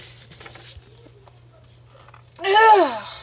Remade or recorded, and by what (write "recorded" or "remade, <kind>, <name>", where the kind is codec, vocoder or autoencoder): recorded